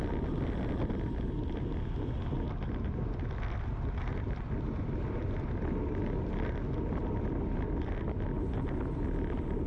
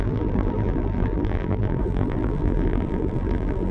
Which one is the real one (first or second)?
first